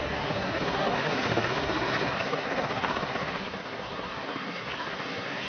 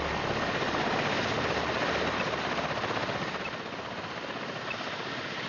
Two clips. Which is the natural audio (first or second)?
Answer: second